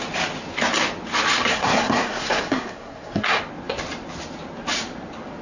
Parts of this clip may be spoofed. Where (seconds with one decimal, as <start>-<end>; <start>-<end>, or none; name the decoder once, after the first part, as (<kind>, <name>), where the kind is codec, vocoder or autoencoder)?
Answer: 1.5-3.4 (codec, SNAC)